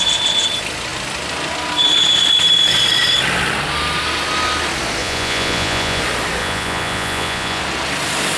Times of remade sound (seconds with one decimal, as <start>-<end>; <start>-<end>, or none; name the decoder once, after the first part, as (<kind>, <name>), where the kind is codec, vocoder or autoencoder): 5.0-6.0 (vocoder, Vocos); 6.4-7.6